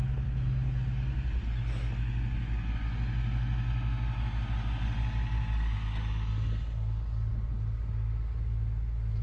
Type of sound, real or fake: real